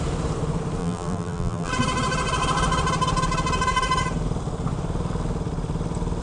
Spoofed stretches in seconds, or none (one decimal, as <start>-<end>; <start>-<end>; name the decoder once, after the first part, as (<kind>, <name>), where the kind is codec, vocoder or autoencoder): 0.8-1.7 (vocoder, BigVGAN v2)